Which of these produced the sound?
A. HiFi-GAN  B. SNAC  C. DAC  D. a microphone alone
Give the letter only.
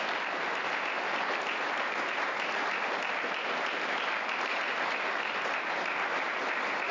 D